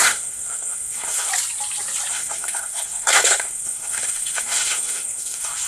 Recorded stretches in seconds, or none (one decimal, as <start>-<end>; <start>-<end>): 1.3-2.1